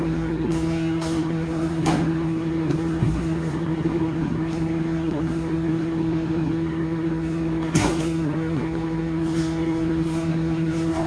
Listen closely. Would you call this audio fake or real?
fake